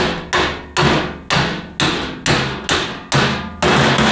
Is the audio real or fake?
real